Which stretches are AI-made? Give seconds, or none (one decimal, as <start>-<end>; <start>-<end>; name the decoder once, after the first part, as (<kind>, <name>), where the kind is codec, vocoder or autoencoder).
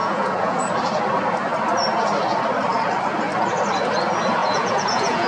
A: 0.0-0.7 (vocoder, Vocos); 4.4-5.3